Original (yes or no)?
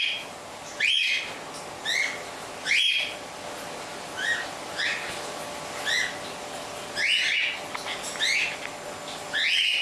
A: yes